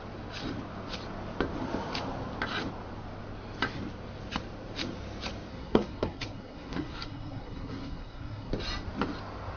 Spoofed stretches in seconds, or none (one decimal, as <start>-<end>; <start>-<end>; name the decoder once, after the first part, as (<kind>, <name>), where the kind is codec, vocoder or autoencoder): 5.5-8.5 (codec, SNAC)